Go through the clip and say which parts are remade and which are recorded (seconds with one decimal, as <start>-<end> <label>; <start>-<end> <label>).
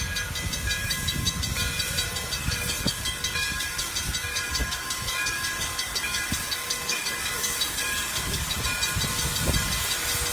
0.0-0.8 recorded; 0.8-1.3 remade; 1.3-2.4 recorded; 2.4-3.9 remade; 3.9-4.3 recorded; 4.3-8.6 remade; 8.6-10.3 recorded